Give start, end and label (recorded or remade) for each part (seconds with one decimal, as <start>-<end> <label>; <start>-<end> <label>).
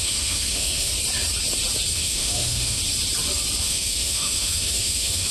0.0-0.9 remade; 0.9-1.9 recorded; 1.9-2.8 remade; 2.8-3.6 recorded; 3.6-5.3 remade